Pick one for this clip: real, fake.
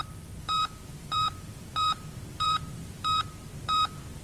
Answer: fake